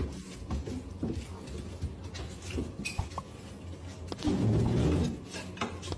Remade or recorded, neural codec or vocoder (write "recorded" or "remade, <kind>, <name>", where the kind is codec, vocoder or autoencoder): recorded